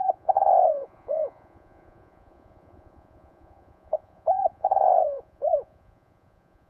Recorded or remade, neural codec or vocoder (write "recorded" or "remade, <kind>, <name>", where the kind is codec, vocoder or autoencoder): remade, vocoder, Vocos